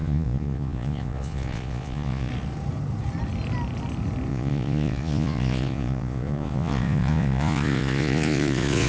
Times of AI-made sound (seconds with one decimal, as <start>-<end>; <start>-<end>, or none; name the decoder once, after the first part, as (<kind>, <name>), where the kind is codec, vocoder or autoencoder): 0.0-2.3 (vocoder, Vocos); 4.3-8.9